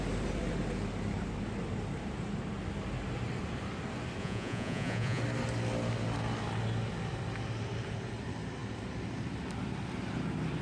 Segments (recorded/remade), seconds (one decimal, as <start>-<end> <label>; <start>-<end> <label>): 0.0-4.2 recorded; 4.2-5.2 remade; 5.2-10.6 recorded